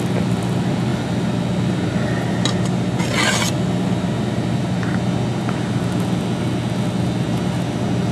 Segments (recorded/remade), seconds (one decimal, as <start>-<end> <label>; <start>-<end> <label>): 0.0-8.1 recorded